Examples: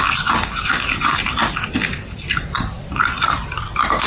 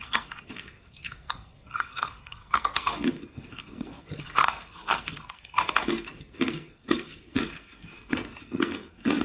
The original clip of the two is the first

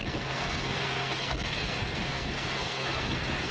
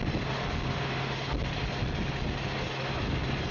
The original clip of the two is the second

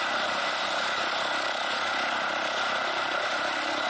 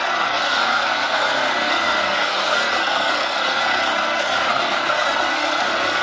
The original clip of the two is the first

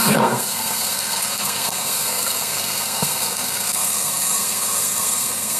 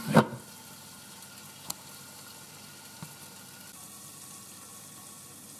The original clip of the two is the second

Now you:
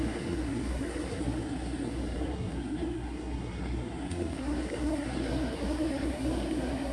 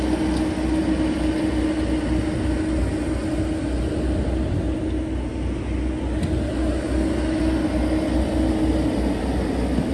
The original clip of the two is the second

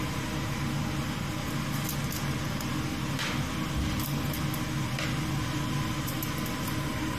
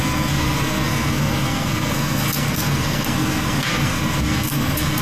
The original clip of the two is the first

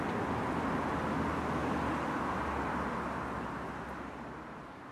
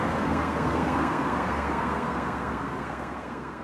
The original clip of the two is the first